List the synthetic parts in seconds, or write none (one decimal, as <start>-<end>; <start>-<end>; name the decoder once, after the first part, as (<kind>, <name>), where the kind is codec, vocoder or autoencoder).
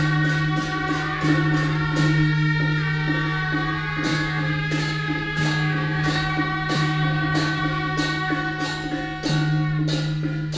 4.1-7.6 (codec, DAC)